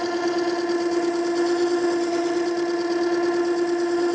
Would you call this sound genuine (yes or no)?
yes